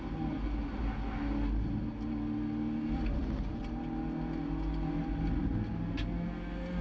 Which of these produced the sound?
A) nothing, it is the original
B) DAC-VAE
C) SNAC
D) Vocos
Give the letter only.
A